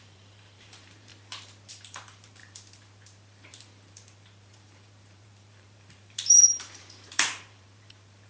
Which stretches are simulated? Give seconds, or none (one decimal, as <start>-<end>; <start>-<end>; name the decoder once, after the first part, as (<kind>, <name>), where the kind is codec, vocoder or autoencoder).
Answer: 0.0-1.1 (vocoder, BigVGAN v2); 1.7-8.3